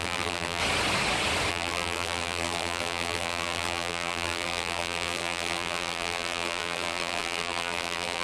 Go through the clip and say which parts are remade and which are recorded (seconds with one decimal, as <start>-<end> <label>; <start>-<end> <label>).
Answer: 0.0-0.6 remade; 0.6-1.5 recorded; 1.5-8.2 remade